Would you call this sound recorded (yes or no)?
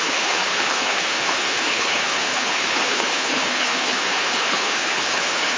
no